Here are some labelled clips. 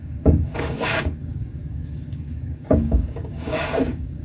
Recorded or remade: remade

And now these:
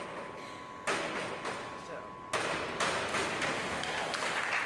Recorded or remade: recorded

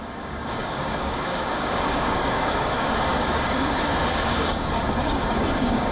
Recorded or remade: remade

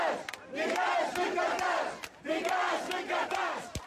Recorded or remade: recorded